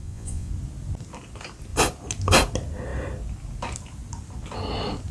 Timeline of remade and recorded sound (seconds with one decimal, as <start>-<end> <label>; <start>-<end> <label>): 0.0-0.5 remade; 0.5-5.1 recorded

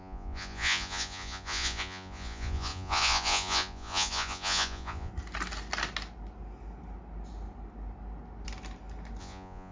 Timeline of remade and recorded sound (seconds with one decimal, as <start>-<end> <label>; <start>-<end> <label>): 0.0-5.1 remade; 5.1-9.2 recorded; 9.2-9.7 remade

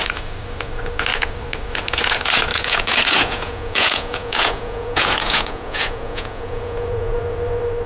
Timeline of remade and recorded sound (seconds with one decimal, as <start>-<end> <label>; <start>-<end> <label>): 0.0-2.5 recorded; 2.5-7.2 remade; 7.2-7.9 recorded

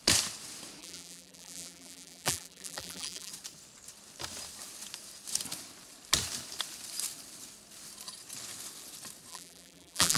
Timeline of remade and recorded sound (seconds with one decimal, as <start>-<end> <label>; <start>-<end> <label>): 0.0-0.8 recorded; 0.8-3.3 remade; 3.3-9.3 recorded; 9.3-10.2 remade

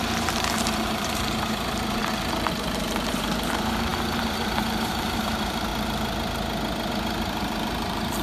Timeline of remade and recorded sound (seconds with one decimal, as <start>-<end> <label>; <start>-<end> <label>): 0.0-2.0 remade; 2.0-3.1 recorded; 3.1-5.7 remade; 5.7-6.9 recorded; 6.9-8.2 remade

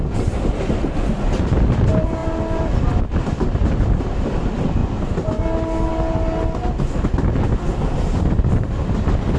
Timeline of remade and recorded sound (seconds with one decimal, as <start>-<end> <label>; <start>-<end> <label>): 0.0-9.4 recorded

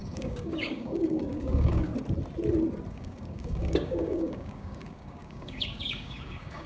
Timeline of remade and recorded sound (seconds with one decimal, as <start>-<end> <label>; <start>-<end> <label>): 0.0-1.9 remade; 1.9-2.9 recorded; 2.9-6.7 remade